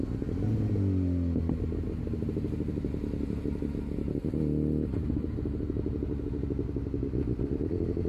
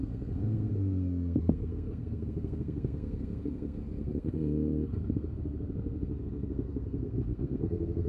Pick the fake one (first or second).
second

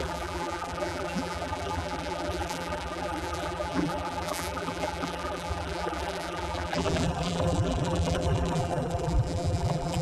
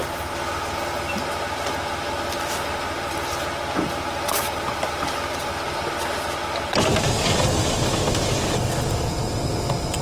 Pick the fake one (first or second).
first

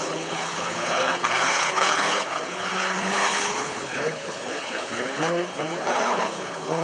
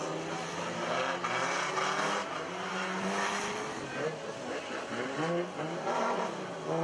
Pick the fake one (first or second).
first